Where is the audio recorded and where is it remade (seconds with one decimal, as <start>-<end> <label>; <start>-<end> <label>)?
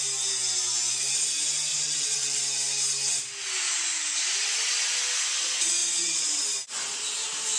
0.0-1.7 recorded; 1.7-2.4 remade; 2.4-5.8 recorded; 5.8-6.4 remade; 6.4-7.6 recorded